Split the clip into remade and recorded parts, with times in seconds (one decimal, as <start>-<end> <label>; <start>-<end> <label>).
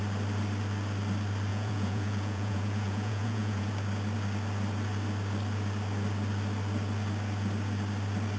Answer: 0.0-1.5 recorded; 1.5-3.7 remade; 3.7-8.4 recorded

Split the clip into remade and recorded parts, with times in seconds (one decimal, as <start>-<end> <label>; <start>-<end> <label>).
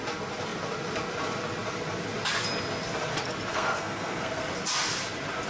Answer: 0.0-3.5 recorded; 3.5-4.5 remade; 4.5-5.5 recorded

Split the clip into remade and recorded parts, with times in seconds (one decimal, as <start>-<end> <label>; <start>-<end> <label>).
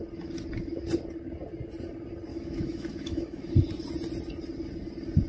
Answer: 0.0-2.3 recorded; 2.3-3.5 remade; 3.5-5.3 recorded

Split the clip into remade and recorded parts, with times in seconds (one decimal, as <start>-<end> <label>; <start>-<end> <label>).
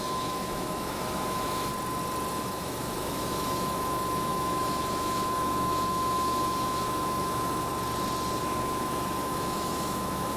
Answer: 0.0-1.7 remade; 1.7-2.3 recorded; 2.3-7.7 remade; 7.7-8.4 recorded; 8.4-10.4 remade